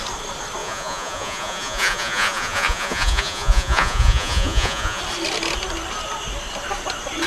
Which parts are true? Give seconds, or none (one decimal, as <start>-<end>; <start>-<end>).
0.0-0.6; 5.0-7.3